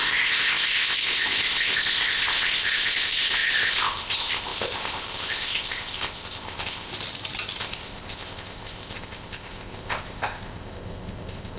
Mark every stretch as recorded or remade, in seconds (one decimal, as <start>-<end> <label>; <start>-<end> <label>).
0.0-6.9 remade; 6.9-7.6 recorded; 7.6-11.6 remade